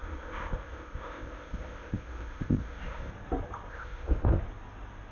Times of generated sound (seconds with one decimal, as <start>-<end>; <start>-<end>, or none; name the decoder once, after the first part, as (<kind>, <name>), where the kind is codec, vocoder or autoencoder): 0.0-3.1 (codec, ZipCodec); 3.7-4.4